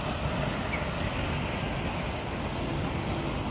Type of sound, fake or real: real